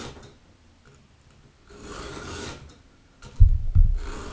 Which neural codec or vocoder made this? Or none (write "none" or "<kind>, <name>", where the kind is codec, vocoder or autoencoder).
none